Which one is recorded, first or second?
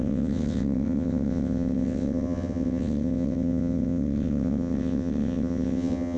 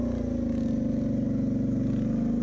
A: second